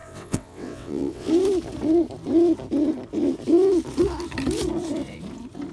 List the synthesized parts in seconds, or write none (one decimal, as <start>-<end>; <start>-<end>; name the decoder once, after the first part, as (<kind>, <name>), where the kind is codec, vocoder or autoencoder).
0.0-1.3 (vocoder, WaveNeXt)